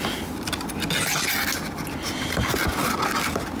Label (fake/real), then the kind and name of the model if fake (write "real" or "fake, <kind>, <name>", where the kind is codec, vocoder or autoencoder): real